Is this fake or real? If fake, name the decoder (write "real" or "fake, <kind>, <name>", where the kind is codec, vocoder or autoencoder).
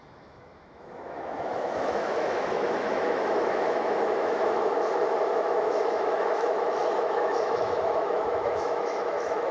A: fake, autoencoder, DAC-VAE